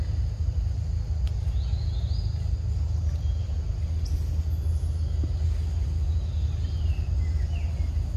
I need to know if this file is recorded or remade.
recorded